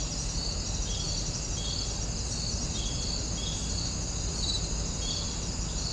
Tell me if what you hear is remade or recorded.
recorded